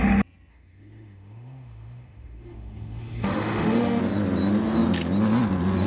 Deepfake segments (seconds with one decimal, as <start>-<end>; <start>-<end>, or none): 0.5-4.0